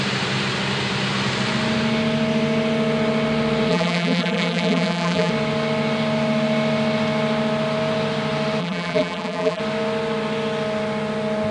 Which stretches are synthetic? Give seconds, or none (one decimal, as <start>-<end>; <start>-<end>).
3.7-5.3; 8.6-9.6